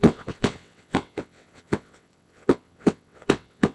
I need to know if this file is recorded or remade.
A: remade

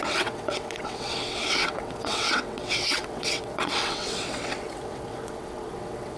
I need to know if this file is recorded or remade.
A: remade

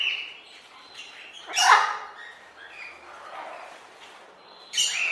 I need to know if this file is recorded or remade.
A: recorded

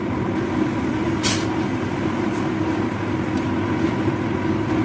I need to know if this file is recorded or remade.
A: recorded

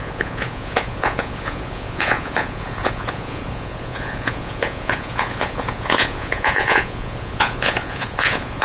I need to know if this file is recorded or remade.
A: remade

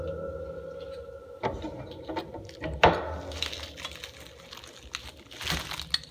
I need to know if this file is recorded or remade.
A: recorded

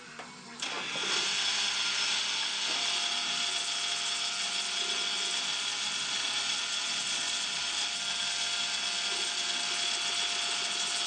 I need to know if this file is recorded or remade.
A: recorded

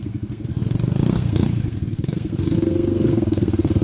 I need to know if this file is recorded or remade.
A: remade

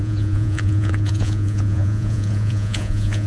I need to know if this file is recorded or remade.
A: remade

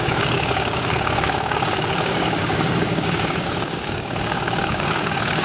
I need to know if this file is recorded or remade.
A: remade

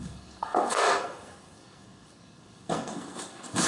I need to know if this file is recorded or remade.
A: remade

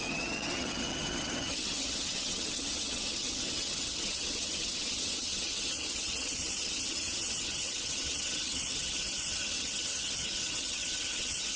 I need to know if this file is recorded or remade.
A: remade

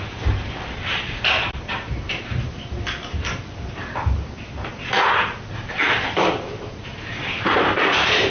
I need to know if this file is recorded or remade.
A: remade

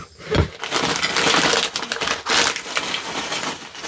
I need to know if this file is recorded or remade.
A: recorded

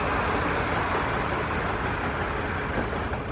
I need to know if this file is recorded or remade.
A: recorded